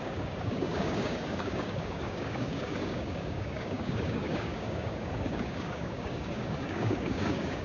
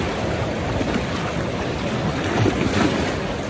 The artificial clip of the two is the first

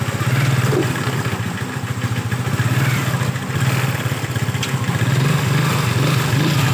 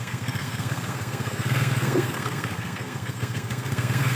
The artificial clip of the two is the second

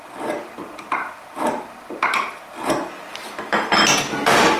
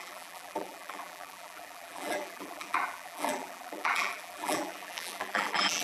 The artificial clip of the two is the second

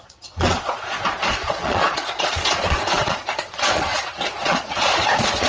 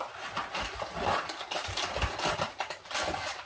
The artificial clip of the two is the first